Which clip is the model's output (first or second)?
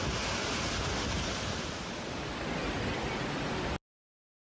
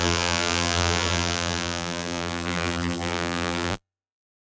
second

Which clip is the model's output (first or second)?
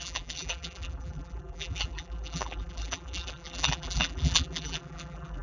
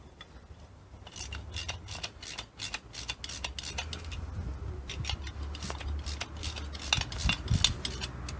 first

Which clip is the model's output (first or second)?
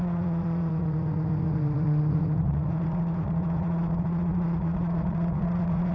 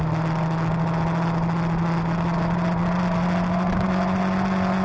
first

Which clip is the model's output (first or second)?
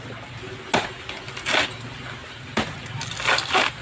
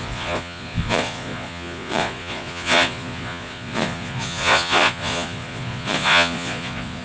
second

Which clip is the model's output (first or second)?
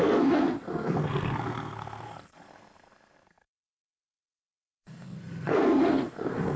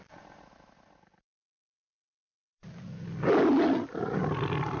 first